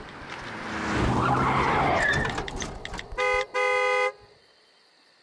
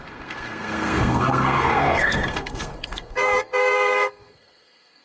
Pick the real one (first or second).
first